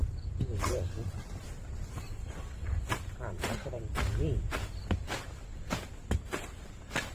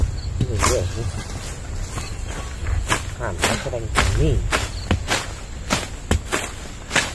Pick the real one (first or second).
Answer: second